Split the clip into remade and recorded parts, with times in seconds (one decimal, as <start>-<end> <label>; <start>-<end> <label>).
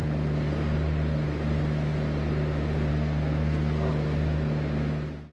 0.0-2.9 recorded; 2.9-3.9 remade; 3.9-5.3 recorded